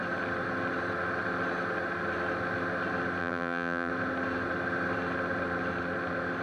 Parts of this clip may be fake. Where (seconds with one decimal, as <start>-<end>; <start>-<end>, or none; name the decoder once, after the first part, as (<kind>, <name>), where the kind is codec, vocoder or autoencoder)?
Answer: 3.2-3.9 (vocoder, BigVGAN v2)